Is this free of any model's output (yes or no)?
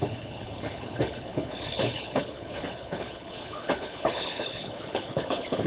no